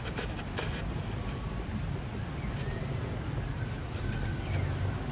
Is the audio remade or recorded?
remade